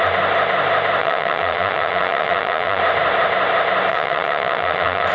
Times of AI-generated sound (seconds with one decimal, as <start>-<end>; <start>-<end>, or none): 1.0-2.8; 3.9-5.1